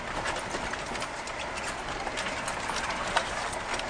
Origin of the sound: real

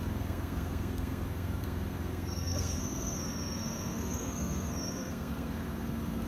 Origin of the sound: fake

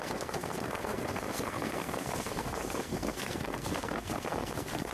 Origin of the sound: fake